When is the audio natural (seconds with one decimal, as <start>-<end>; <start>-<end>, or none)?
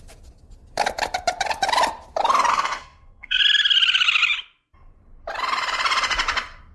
0.0-2.5; 3.4-6.7